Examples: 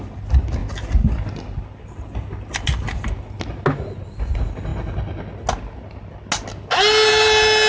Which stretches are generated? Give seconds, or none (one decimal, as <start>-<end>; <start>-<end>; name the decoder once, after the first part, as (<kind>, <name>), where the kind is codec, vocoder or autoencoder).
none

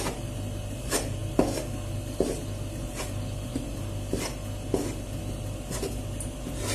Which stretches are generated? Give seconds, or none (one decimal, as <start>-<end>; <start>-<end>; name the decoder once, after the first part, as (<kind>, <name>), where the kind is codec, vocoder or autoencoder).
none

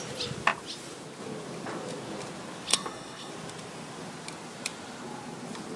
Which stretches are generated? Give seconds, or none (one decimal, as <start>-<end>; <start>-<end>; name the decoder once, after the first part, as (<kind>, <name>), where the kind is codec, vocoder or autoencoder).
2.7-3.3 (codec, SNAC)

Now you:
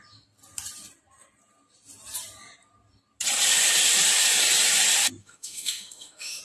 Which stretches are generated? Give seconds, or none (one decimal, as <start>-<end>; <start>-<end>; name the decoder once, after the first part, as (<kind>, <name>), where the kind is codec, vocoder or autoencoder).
5.2-6.4 (autoencoder, DAC-VAE)